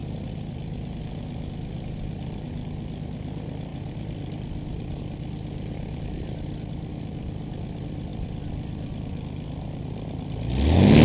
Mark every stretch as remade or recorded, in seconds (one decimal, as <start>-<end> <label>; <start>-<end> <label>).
0.0-1.0 remade; 1.0-3.7 recorded; 3.7-5.0 remade; 5.0-6.1 recorded; 6.1-6.9 remade; 6.9-8.1 recorded; 8.1-10.5 remade; 10.5-11.0 recorded